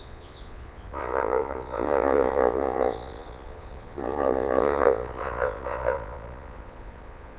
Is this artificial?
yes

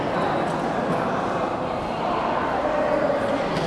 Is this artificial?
no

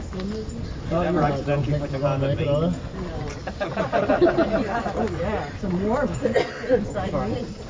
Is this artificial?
no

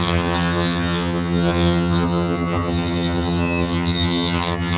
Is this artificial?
yes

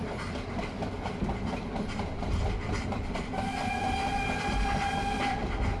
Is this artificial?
no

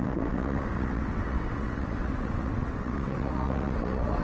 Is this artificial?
yes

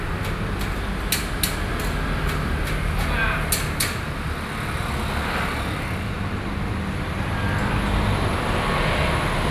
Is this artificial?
no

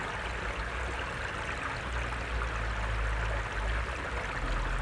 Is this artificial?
no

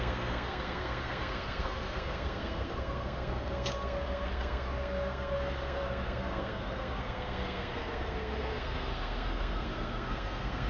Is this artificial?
yes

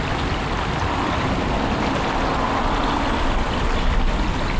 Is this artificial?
no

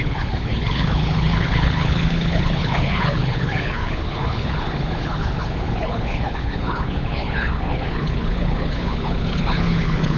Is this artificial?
yes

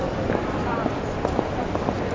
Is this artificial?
no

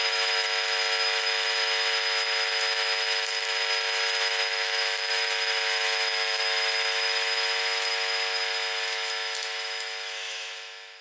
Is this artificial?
yes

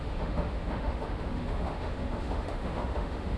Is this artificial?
yes